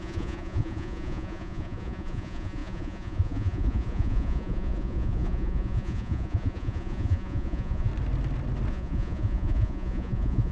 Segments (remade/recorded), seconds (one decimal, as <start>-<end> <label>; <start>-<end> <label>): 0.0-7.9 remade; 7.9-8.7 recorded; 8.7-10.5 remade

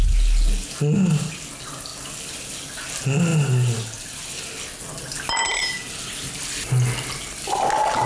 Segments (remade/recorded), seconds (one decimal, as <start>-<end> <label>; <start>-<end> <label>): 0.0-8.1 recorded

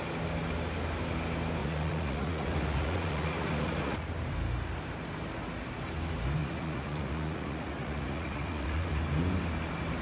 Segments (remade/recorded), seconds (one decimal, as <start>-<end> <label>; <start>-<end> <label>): 0.0-1.6 recorded; 1.6-4.1 remade; 4.1-6.4 recorded; 6.4-9.0 remade; 9.0-10.0 recorded

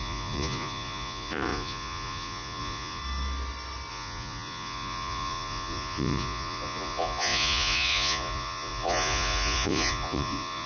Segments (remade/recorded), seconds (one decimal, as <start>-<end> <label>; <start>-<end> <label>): 0.0-3.0 remade; 3.0-3.9 recorded; 3.9-10.7 remade

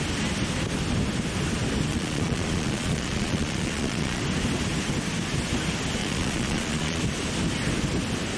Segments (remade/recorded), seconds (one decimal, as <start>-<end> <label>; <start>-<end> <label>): 0.0-1.9 recorded; 1.9-4.2 remade; 4.2-6.0 recorded; 6.0-7.0 remade; 7.0-8.4 recorded

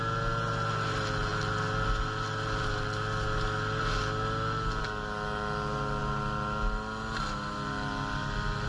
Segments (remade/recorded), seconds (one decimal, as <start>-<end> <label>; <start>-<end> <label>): 0.0-8.7 recorded